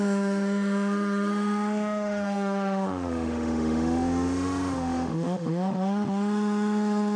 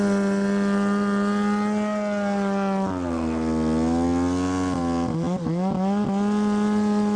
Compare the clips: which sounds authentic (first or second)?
second